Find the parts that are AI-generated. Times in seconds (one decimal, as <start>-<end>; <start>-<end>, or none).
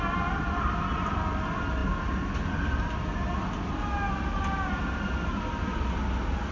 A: none